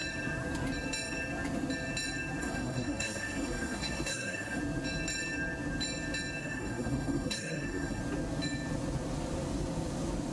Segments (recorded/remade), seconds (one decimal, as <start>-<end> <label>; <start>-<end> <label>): 0.0-2.4 recorded; 2.4-4.6 remade; 4.6-6.4 recorded; 6.4-8.0 remade; 8.0-10.3 recorded